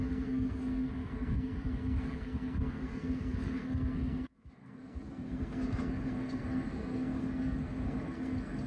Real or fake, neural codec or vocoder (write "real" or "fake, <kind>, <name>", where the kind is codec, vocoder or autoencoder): fake, codec, SNAC